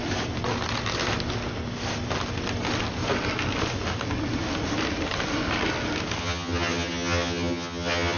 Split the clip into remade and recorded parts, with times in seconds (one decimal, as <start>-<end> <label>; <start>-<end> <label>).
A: 0.0-6.2 recorded; 6.2-8.2 remade